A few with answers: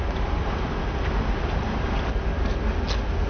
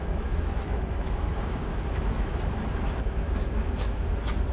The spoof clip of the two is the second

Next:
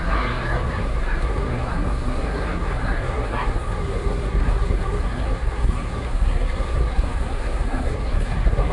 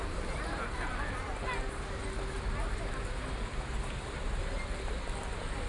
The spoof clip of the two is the first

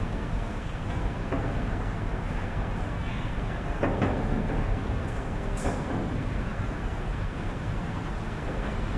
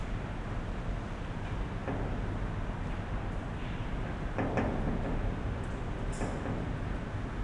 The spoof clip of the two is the first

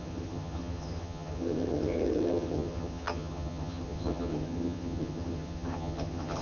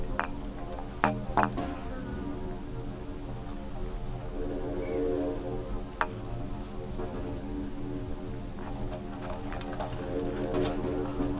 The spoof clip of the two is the first